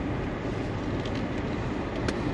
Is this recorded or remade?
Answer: recorded